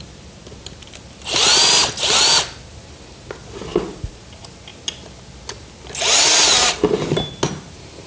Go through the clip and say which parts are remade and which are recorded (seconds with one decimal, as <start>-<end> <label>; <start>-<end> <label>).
0.0-8.1 recorded